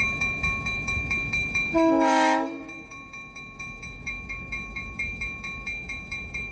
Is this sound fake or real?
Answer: fake